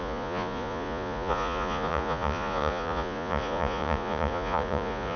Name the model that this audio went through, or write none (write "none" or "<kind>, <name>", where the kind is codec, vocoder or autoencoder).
vocoder, Vocos